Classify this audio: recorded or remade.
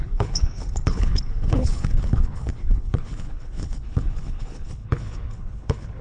remade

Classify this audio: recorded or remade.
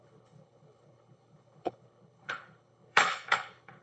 remade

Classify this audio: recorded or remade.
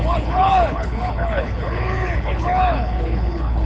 remade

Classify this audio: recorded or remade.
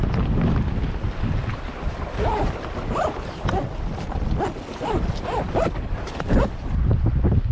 recorded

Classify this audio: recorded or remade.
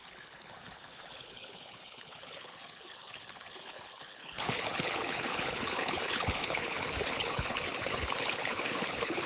remade